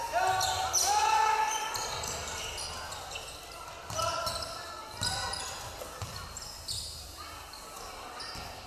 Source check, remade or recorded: recorded